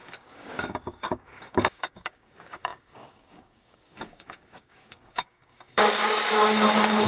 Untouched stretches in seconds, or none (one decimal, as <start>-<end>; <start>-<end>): none